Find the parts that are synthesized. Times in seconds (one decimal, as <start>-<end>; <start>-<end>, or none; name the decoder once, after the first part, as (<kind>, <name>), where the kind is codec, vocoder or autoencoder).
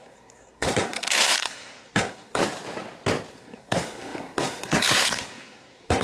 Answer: 0.0-2.4 (codec, SNAC); 3.3-6.0